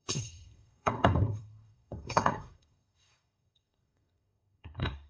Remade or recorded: remade